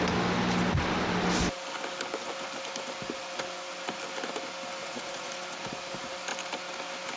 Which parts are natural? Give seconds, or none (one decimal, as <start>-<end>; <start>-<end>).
0.0-4.8; 5.3-7.2